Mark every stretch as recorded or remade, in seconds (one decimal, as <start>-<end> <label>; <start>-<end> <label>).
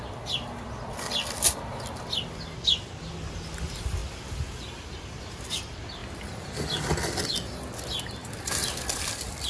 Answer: 0.0-9.5 recorded